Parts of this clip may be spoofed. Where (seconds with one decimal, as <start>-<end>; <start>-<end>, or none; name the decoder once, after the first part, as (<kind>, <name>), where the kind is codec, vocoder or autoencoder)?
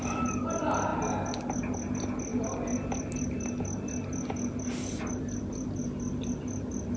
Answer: none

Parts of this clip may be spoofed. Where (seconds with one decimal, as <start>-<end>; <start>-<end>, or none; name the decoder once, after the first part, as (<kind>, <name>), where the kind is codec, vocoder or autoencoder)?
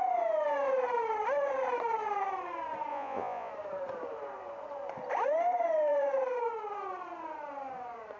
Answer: 2.9-3.5 (vocoder, Vocos)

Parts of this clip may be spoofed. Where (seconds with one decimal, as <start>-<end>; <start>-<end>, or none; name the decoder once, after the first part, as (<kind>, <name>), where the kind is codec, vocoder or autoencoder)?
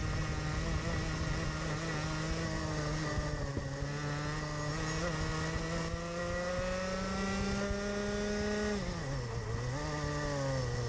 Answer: none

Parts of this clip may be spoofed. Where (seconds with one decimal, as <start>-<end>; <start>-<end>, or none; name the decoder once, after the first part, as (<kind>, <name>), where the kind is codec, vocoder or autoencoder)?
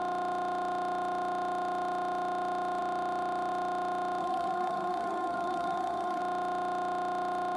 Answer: 4.2-6.2 (codec, SNAC)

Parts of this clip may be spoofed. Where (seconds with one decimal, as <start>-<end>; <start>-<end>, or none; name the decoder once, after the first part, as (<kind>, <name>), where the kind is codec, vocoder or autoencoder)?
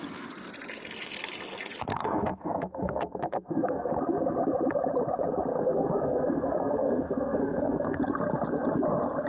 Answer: 1.9-3.9 (codec, SNAC); 5.5-8.0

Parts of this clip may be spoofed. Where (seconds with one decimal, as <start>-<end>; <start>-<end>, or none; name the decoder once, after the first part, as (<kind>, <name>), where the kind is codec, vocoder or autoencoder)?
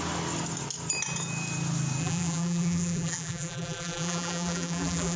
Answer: 2.0-5.2 (vocoder, BigVGAN v2)